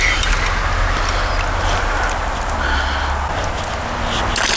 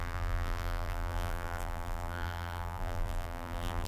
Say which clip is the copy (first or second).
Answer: second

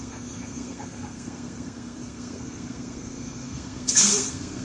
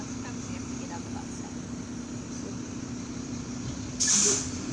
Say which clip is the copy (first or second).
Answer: first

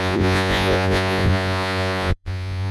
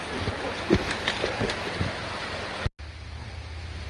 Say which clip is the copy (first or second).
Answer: first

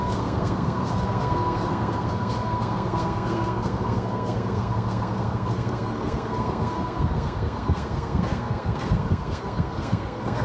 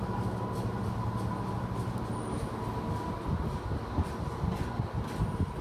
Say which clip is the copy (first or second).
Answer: first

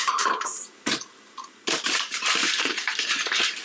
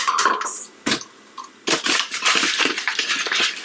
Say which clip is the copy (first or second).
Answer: first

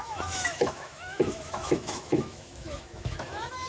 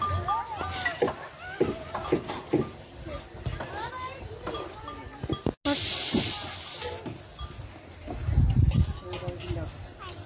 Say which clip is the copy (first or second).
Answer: first